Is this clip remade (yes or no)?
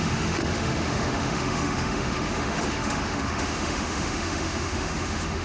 yes